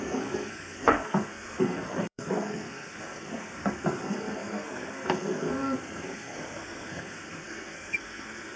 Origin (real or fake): fake